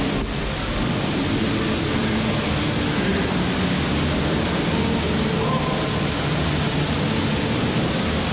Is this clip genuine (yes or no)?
yes